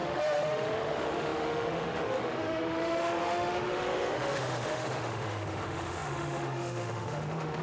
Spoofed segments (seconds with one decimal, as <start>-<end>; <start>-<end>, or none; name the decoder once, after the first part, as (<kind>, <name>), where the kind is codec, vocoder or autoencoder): 0.0-7.6 (autoencoder, DAC-VAE)